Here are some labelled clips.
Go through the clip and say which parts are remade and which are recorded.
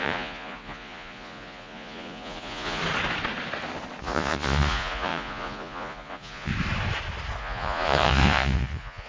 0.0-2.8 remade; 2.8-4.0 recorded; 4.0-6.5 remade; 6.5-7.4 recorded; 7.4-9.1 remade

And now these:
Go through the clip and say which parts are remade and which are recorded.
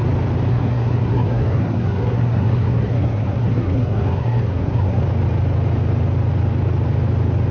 0.0-0.5 recorded; 0.5-5.0 remade; 5.0-7.5 recorded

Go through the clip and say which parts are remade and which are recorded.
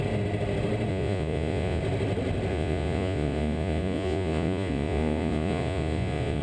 0.0-0.9 recorded; 0.9-1.8 remade; 1.8-2.5 recorded; 2.5-6.4 remade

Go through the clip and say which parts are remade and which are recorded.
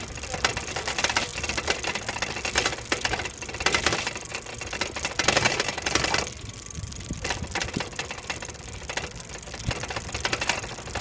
0.0-11.0 recorded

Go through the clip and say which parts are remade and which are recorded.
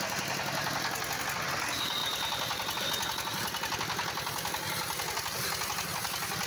0.0-6.5 recorded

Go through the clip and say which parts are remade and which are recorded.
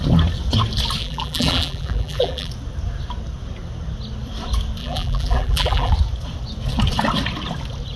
0.0-1.0 recorded; 1.0-2.5 remade; 2.5-4.8 recorded; 4.8-5.9 remade; 5.9-8.0 recorded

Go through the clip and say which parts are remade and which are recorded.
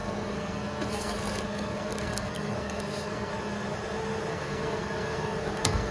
0.0-3.3 remade; 3.3-4.3 recorded; 4.3-5.9 remade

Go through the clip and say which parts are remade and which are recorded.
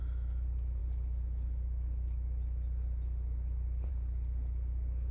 0.0-5.1 recorded